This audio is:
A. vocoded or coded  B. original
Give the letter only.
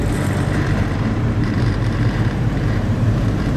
A